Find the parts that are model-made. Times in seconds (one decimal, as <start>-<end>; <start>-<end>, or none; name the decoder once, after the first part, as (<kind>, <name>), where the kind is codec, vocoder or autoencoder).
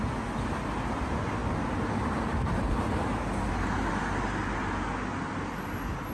none